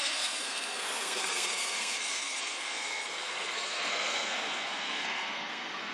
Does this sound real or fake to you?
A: fake